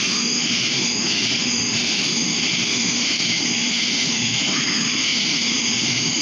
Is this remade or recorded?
remade